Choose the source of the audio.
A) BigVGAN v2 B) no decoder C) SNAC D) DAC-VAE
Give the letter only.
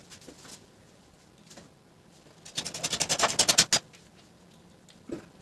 B